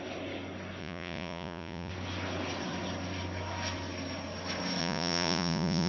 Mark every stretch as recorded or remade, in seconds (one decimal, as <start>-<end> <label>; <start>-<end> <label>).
0.0-0.8 recorded; 0.8-1.9 remade; 1.9-4.8 recorded; 4.8-5.9 remade